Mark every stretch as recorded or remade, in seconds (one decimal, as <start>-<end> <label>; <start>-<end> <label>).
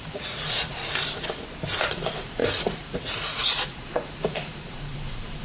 0.0-0.8 remade; 0.8-1.9 recorded; 1.9-5.4 remade